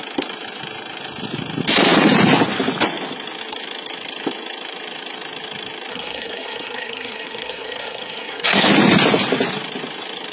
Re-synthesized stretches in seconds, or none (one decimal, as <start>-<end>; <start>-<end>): 5.9-8.7